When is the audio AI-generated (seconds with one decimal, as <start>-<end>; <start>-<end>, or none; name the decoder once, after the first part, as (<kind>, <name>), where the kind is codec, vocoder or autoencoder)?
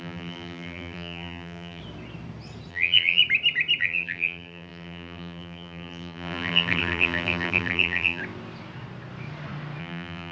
0.0-1.8 (vocoder, BigVGAN v2); 2.7-3.2; 3.8-8.2; 9.8-10.3